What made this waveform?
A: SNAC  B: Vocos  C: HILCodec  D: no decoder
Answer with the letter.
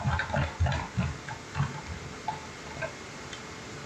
D